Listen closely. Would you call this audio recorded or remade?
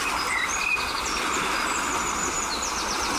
remade